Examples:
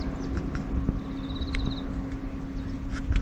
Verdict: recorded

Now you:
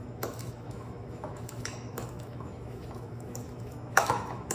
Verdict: remade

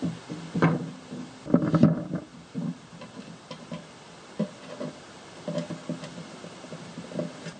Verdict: recorded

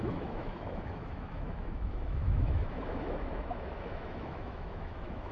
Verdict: remade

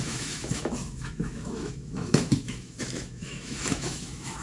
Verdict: remade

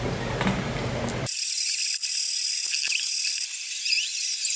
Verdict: recorded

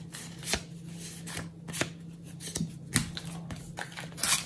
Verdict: recorded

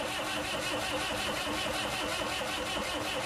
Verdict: recorded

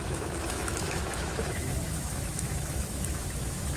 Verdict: remade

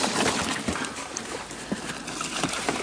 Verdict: recorded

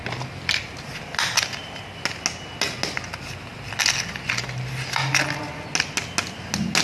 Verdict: recorded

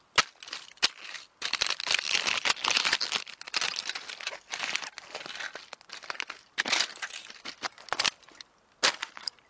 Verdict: recorded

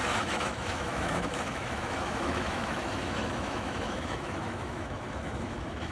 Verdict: remade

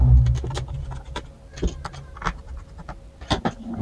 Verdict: recorded